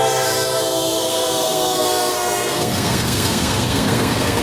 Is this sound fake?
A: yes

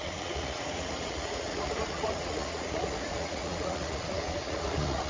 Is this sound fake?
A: yes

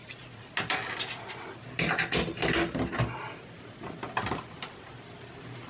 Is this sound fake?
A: no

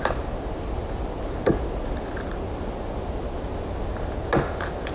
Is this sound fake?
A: no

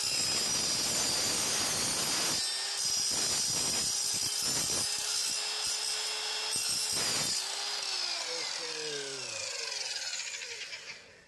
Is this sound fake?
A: no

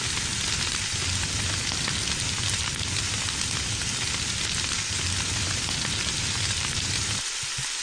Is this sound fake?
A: no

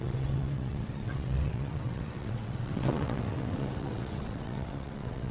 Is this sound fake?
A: yes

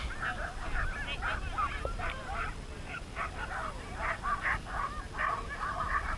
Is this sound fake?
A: no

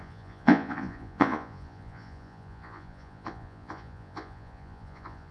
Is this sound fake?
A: yes